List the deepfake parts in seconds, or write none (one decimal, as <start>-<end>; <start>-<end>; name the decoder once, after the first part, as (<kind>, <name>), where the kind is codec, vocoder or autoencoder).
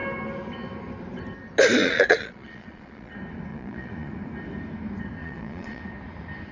1.8-3.1 (vocoder, Vocos); 3.5-4.1; 5.2-5.8